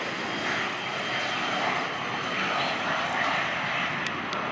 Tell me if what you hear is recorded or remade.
recorded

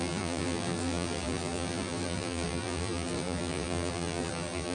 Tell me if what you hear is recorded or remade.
remade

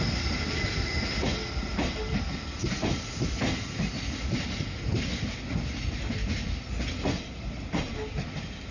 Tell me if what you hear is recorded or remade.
recorded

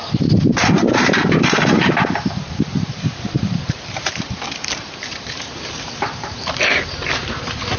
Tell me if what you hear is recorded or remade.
remade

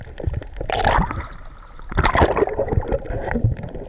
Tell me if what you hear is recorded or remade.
remade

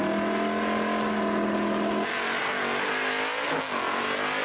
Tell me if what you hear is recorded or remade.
recorded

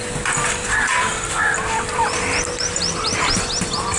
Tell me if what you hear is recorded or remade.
recorded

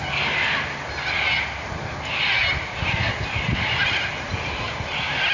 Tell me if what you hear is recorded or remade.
recorded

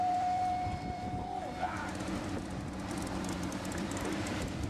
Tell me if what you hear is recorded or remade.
remade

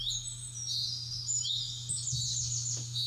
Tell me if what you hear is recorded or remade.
recorded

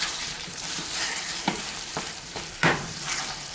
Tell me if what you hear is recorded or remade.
remade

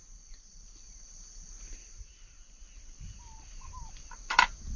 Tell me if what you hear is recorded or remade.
remade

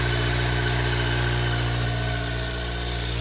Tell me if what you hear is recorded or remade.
recorded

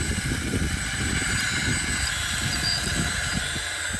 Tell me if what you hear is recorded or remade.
recorded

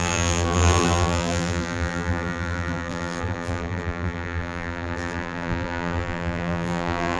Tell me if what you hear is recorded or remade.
remade